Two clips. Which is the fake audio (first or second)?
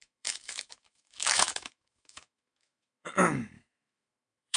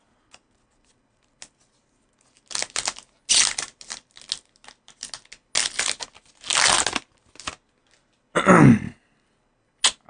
first